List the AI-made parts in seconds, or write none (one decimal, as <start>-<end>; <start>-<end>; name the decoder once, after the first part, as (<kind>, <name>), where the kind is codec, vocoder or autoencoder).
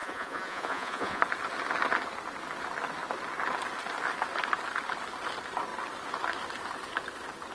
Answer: 0.0-1.2 (vocoder, Vocos)